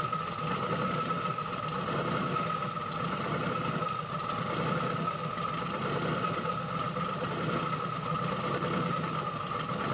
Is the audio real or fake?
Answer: real